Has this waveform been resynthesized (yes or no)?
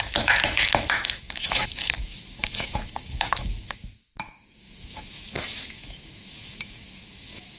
yes